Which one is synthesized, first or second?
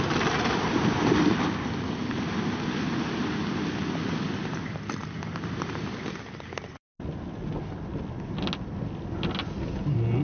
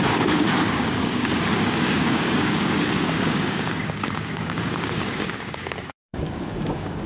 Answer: second